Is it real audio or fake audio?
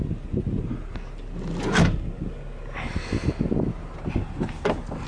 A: real